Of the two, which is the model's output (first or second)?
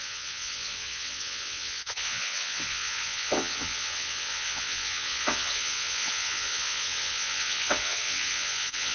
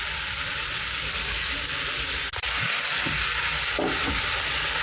first